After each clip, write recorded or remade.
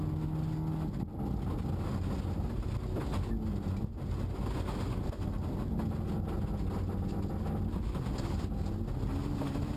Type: recorded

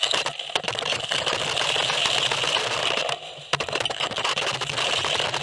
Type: recorded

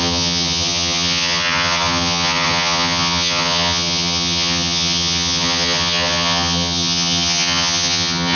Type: remade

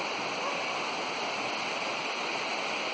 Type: recorded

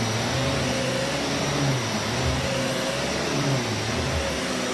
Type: recorded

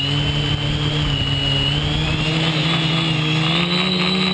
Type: recorded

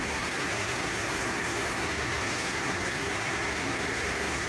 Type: remade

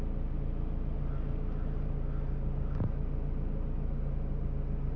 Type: recorded